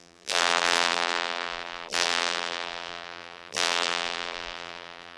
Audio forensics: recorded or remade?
remade